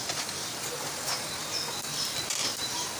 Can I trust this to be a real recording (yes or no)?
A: yes